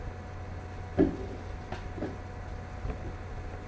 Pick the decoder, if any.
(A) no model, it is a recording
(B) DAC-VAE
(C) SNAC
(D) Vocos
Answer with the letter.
A